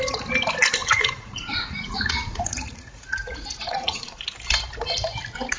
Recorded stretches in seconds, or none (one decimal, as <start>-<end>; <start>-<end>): 0.0-0.8; 4.2-5.6